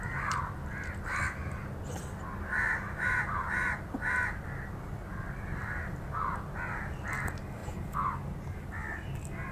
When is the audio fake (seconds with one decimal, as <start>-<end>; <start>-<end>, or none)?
none